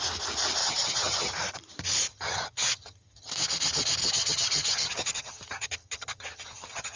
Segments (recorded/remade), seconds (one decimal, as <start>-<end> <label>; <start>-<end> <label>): 0.0-0.6 recorded; 0.6-1.3 remade; 1.3-2.1 recorded; 2.1-3.3 remade; 3.3-4.0 recorded; 4.0-7.0 remade